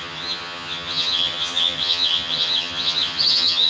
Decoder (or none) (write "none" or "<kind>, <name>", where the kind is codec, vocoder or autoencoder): vocoder, HiFi-GAN